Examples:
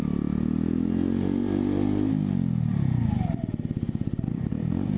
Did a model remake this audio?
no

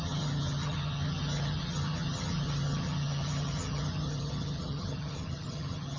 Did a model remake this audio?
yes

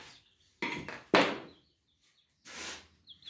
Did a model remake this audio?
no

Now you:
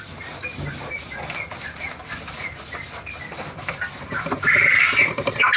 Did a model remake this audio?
no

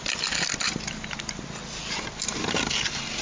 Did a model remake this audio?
no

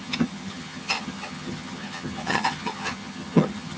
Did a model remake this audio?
yes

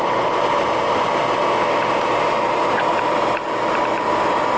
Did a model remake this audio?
no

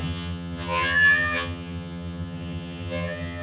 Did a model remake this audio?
yes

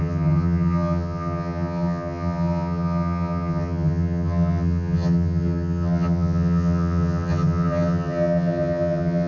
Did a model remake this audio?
yes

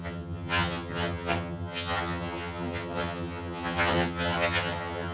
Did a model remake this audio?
yes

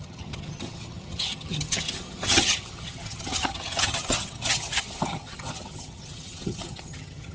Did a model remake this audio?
yes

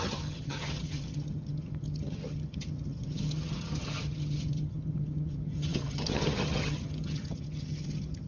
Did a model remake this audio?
yes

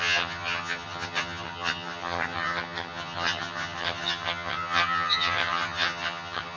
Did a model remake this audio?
yes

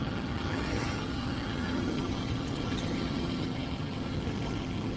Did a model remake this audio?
yes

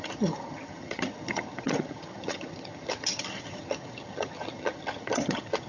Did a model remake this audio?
yes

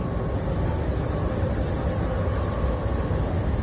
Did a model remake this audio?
no